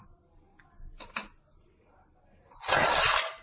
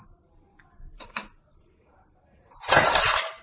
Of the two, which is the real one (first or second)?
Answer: first